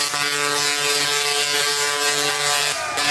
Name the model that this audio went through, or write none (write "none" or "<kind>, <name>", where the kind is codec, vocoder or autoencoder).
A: none